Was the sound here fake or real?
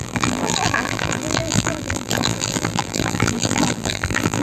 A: fake